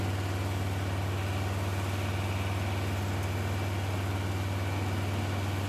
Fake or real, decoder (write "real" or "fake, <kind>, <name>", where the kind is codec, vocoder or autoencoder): real